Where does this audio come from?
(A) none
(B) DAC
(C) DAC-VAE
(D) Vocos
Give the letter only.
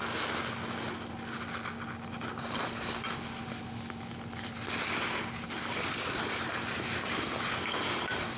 A